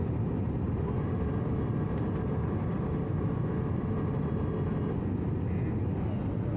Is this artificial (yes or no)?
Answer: no